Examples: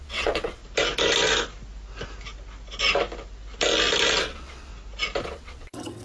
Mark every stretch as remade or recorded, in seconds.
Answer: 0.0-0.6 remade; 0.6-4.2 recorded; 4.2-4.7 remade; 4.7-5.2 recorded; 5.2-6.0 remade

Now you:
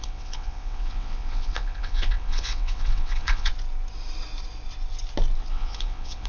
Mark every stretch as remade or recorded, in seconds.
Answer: 0.0-3.5 remade; 3.5-5.5 recorded; 5.5-6.3 remade

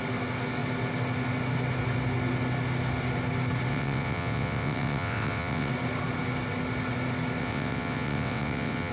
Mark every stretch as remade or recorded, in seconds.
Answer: 0.0-3.7 recorded; 3.7-5.7 remade; 5.7-7.4 recorded; 7.4-8.9 remade

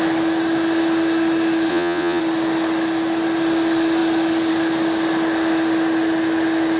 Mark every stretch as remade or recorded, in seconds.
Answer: 0.0-1.7 recorded; 1.7-2.2 remade; 2.2-6.8 recorded

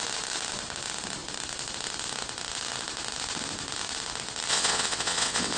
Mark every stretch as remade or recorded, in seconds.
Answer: 0.0-4.5 recorded; 4.5-5.6 remade

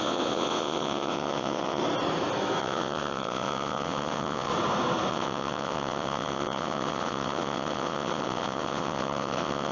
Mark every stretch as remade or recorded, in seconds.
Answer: 0.0-1.8 remade; 1.8-2.6 recorded; 2.6-4.5 remade; 4.5-5.1 recorded; 5.1-9.7 remade